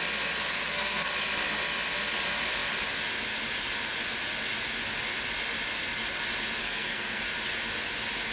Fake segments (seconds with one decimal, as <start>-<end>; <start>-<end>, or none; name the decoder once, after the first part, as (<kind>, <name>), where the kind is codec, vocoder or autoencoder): 0.4-1.1 (codec, SNAC); 6.6-7.2

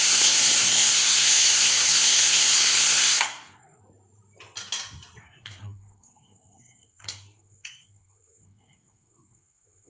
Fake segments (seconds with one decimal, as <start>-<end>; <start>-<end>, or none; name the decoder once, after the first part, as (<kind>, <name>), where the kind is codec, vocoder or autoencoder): 0.0-3.8 (codec, SNAC); 5.2-9.9

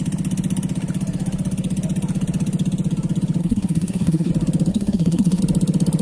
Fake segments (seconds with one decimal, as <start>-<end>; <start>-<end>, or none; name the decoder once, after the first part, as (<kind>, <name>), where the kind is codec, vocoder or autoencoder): 3.4-4.3 (codec, SNAC); 4.7-5.4

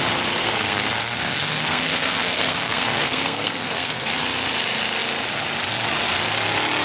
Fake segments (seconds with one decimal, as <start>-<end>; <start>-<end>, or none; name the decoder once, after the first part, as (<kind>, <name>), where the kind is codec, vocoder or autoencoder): 0.4-4.1 (codec, SNAC)

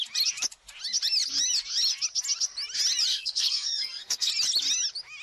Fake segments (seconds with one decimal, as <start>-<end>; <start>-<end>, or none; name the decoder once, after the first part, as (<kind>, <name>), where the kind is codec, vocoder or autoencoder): 3.1-4.3 (codec, SNAC)